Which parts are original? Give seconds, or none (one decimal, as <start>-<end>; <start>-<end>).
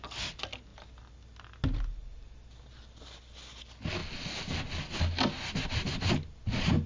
0.0-6.9